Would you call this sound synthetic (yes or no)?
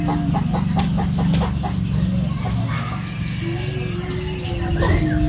no